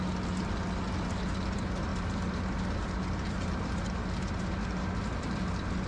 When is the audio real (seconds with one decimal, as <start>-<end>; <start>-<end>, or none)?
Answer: 0.0-5.9